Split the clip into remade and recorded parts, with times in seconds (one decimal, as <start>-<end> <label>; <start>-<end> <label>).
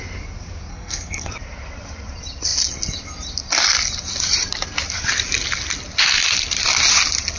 0.0-0.7 recorded; 0.7-1.3 remade; 1.3-7.4 recorded